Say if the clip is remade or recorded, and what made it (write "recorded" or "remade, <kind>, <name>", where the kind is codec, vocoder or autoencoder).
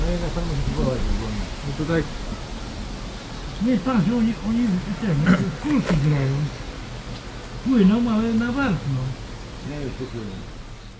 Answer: recorded